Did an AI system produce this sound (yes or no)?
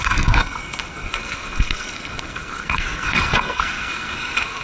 yes